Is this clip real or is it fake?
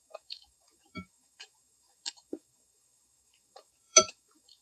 fake